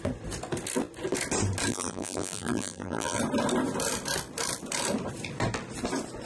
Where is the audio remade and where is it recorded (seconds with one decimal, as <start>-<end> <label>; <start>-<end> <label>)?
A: 0.0-1.7 recorded; 1.7-3.2 remade; 3.2-6.3 recorded